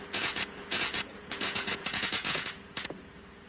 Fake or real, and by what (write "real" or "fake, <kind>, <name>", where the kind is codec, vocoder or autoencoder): fake, vocoder, Vocos